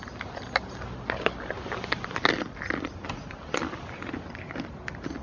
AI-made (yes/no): no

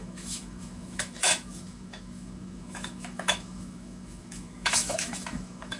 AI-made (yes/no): yes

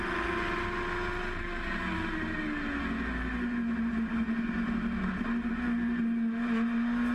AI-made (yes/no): no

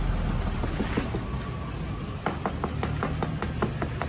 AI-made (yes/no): no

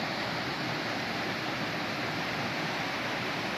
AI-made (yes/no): no